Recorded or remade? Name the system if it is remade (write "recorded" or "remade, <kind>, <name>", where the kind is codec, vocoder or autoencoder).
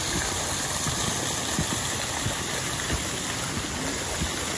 recorded